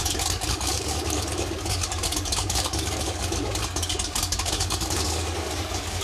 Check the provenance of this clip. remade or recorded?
remade